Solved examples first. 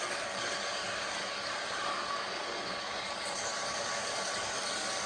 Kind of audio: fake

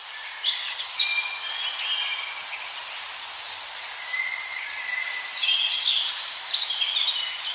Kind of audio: real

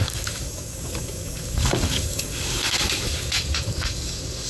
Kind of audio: fake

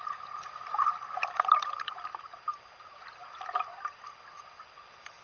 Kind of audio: real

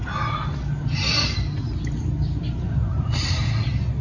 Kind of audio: real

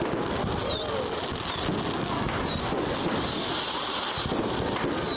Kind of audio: real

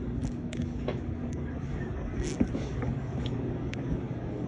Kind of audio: fake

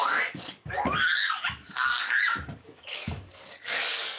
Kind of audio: fake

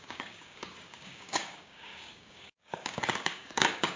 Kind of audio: fake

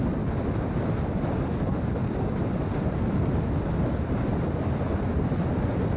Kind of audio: real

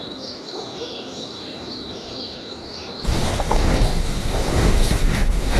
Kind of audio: fake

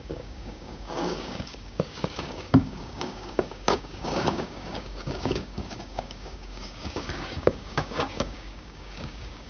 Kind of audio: fake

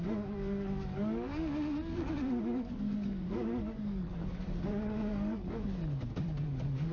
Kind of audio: fake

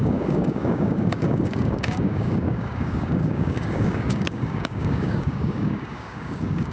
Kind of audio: fake